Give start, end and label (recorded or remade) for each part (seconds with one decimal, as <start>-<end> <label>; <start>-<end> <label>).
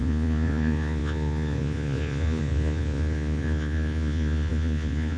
0.0-5.2 remade